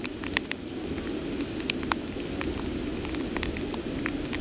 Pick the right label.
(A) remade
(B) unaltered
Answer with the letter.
B